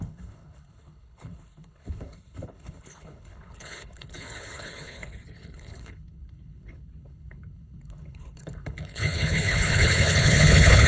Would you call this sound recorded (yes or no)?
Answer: no